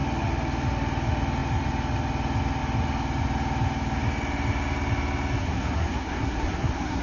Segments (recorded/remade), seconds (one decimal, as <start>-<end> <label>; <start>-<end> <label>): 0.0-5.4 recorded; 5.4-7.0 remade